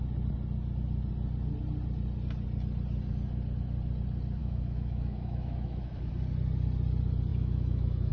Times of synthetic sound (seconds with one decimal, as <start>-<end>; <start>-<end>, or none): 4.4-6.1; 7.3-8.1